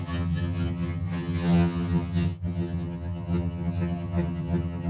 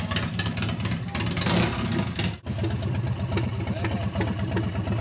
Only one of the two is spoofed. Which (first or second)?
first